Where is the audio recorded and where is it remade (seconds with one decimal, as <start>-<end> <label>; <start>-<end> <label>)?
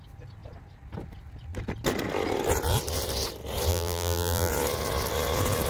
0.0-3.7 recorded; 3.7-4.5 remade; 4.5-5.7 recorded